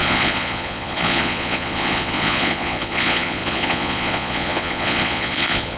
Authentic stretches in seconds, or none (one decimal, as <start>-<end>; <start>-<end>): none